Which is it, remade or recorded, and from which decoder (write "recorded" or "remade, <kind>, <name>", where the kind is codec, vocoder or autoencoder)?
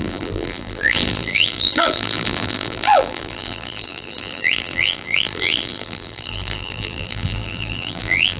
remade, vocoder, BigVGAN v2